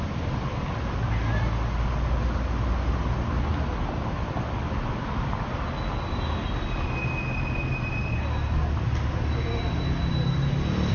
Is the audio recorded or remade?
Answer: recorded